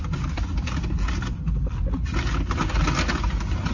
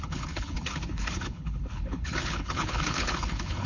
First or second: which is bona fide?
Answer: first